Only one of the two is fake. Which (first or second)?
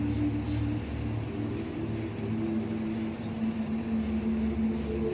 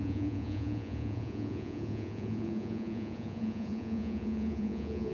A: second